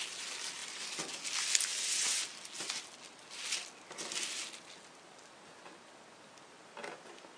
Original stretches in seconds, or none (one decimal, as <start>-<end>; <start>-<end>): 0.0-1.7; 2.2-7.4